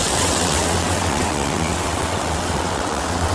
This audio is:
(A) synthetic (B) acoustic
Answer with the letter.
A